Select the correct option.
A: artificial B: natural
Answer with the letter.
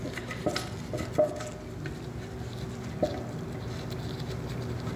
B